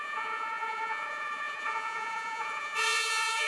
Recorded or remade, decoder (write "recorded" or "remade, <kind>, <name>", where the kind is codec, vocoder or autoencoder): remade, vocoder, Vocos